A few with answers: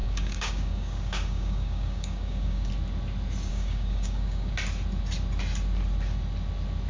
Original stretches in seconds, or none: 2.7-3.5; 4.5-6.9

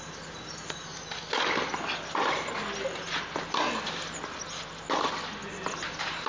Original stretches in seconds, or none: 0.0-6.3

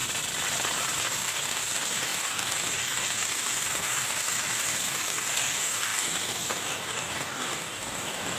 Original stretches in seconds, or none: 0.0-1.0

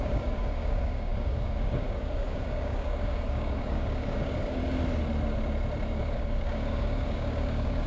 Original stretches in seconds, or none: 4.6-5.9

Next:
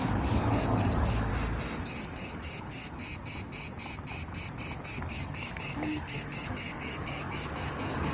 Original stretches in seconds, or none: 1.3-1.8; 3.0-5.0

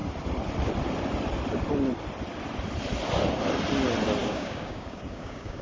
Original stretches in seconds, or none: 0.0-4.2

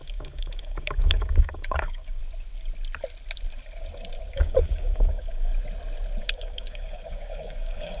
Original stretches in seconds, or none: 2.2-4.3; 5.5-6.2